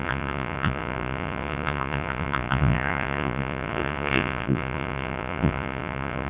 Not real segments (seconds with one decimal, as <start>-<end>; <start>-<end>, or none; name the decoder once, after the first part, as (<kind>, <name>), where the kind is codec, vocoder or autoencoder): 0.0-6.3 (vocoder, Vocos)